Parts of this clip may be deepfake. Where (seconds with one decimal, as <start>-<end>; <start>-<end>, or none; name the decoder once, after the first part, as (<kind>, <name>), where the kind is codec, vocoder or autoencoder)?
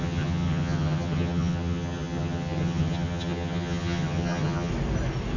0.0-4.7 (vocoder, HiFi-GAN)